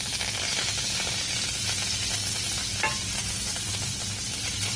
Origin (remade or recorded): recorded